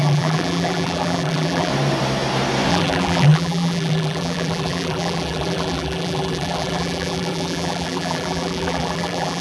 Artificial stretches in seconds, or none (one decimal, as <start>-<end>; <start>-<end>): 0.0-1.7; 2.7-9.4